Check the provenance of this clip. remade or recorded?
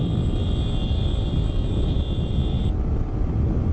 recorded